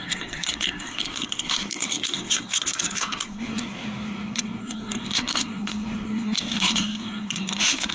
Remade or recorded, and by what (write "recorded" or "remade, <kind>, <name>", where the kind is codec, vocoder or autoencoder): remade, codec, SNAC